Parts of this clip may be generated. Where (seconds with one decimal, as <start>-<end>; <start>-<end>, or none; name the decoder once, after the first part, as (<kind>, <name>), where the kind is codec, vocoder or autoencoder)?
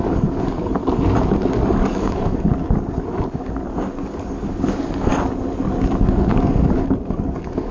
0.0-0.8 (codec, DAC); 1.7-2.5; 4.0-5.1; 6.0-7.7